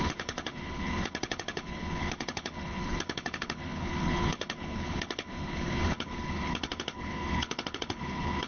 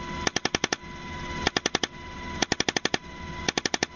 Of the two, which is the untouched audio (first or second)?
second